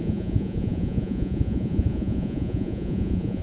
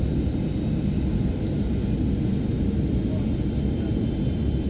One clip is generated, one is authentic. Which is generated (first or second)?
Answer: first